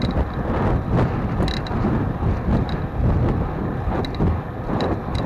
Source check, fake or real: real